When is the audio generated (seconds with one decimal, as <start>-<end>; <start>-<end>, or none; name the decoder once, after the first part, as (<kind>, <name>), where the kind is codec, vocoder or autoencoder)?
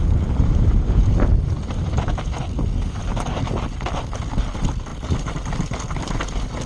none